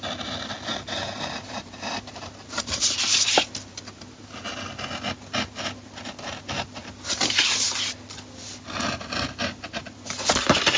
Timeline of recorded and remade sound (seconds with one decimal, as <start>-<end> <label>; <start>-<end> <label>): 0.0-0.7 recorded; 0.7-4.2 remade; 4.2-6.8 recorded; 6.8-7.9 remade; 7.9-10.8 recorded